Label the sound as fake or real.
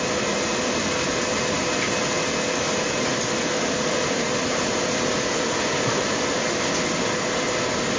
real